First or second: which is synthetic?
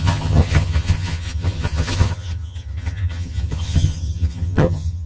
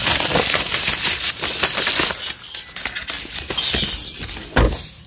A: first